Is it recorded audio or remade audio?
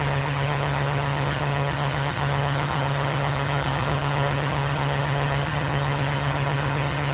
remade